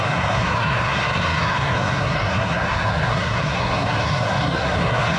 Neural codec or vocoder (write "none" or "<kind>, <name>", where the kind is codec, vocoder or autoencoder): codec, SNAC